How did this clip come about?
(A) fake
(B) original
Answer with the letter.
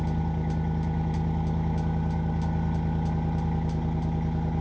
B